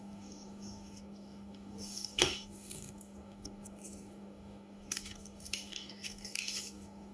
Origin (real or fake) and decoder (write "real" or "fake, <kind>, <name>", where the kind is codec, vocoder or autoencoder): fake, codec, DAC